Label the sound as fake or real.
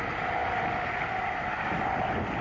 real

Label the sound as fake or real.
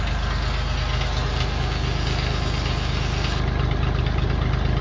real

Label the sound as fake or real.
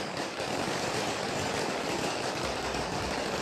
fake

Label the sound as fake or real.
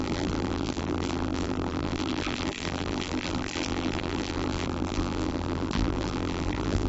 fake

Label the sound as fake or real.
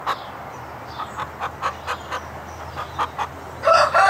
real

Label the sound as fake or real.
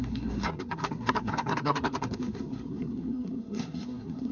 fake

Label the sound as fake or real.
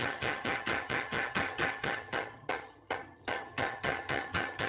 fake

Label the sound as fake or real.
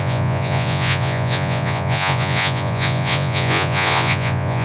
fake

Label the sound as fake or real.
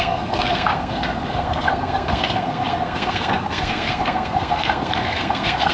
fake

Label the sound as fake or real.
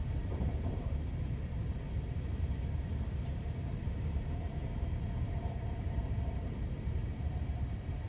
fake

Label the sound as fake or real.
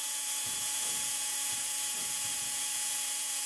fake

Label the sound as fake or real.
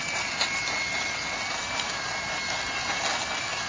real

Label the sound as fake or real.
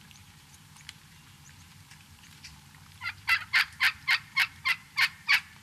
fake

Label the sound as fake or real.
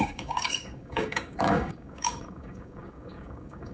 fake